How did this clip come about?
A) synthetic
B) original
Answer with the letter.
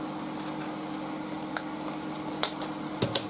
B